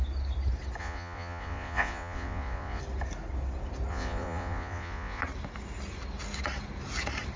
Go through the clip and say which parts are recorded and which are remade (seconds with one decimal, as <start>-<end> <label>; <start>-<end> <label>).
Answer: 0.0-0.8 recorded; 0.8-2.8 remade; 2.8-3.9 recorded; 3.9-5.2 remade; 5.2-7.4 recorded